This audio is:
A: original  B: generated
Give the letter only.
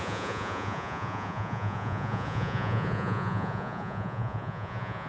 B